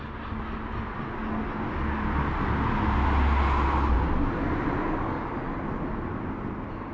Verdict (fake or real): real